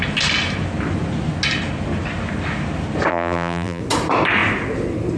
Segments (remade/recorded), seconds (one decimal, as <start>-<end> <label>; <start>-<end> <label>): 0.0-3.1 recorded; 3.1-3.8 remade; 3.8-5.2 recorded